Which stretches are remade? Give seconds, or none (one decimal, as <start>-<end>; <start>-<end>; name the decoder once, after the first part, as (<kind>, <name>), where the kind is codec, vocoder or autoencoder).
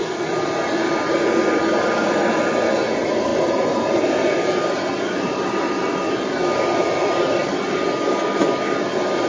none